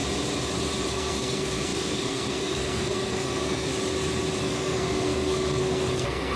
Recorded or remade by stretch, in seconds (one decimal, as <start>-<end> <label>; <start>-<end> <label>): 0.0-0.9 recorded; 0.9-3.7 remade; 3.7-4.4 recorded; 4.4-6.4 remade